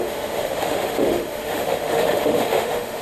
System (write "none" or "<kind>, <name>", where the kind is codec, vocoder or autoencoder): autoencoder, DAC-VAE